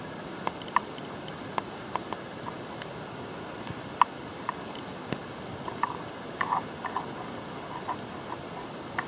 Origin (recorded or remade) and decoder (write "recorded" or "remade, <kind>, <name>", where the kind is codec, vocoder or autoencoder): recorded